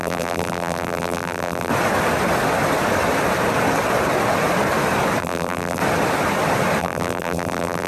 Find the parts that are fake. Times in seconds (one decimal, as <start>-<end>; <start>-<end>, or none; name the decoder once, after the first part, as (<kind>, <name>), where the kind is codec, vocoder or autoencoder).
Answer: 0.0-1.7 (vocoder, BigVGAN v2); 5.2-5.8; 6.8-7.9